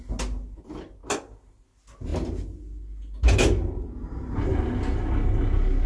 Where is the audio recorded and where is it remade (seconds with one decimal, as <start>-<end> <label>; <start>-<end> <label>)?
0.0-5.9 recorded